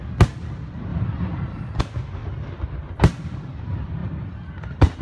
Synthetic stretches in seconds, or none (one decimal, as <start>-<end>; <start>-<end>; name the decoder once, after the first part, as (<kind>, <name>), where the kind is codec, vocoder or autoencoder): 0.9-1.8 (vocoder, BigVGAN v2); 2.2-3.6; 4.0-5.0